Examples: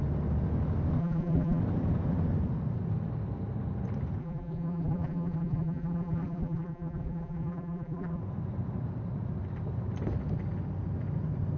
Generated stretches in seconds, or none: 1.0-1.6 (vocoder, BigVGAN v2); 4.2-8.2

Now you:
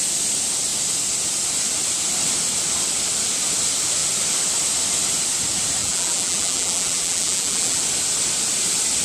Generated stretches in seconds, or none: 5.8-7.8 (vocoder, BigVGAN v2)